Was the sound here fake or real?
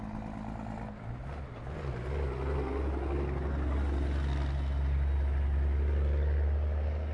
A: real